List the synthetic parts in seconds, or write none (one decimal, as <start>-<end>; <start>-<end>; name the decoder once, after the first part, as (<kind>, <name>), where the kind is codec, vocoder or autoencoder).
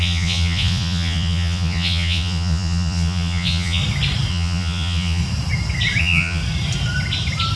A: 0.0-3.8 (vocoder, Vocos); 4.3-5.2; 6.0-6.4